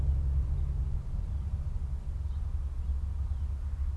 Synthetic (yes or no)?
no